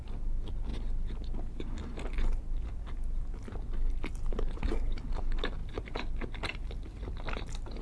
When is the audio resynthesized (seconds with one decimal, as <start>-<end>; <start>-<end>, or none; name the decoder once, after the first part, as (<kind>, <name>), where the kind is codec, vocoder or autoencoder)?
none